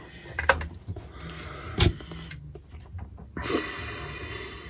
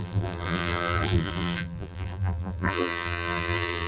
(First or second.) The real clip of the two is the first